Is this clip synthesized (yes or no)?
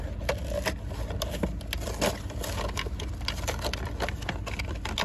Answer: no